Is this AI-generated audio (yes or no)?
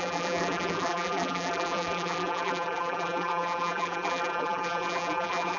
yes